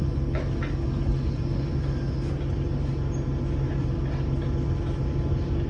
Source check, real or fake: real